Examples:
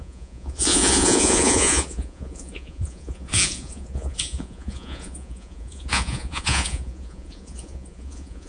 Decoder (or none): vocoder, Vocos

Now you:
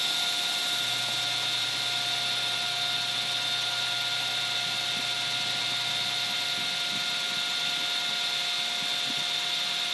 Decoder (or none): none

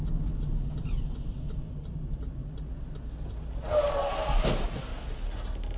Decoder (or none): none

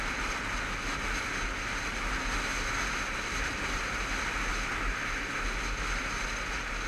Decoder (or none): none